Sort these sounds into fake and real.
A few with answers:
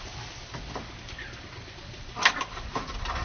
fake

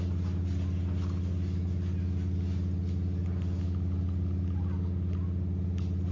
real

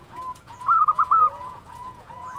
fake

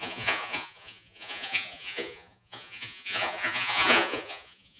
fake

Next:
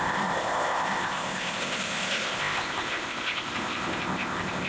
fake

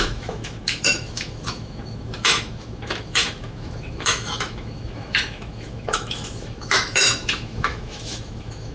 fake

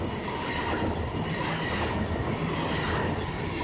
real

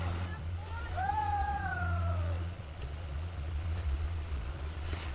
fake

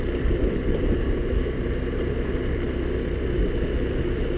real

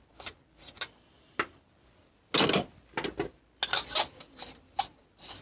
real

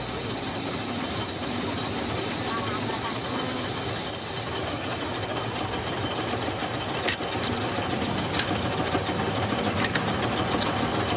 real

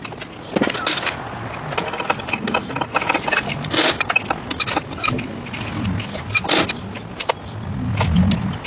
real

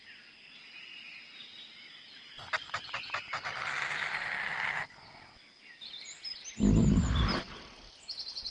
real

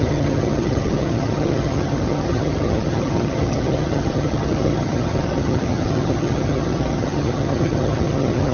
fake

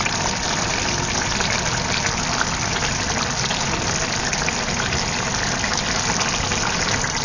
real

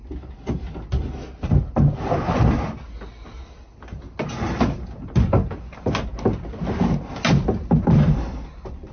real